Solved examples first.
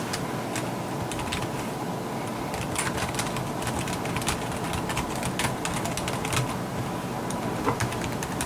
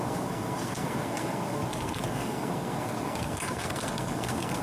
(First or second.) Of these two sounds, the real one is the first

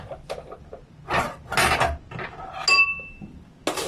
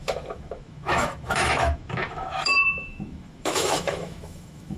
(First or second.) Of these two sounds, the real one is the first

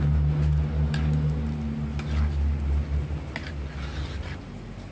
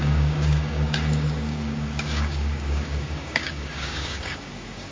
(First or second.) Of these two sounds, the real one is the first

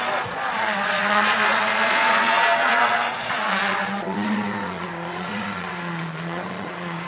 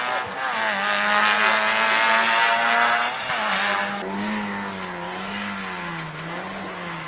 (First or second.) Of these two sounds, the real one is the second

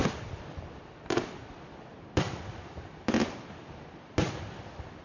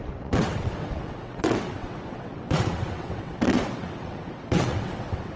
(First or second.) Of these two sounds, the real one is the first